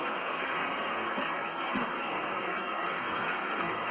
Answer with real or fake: fake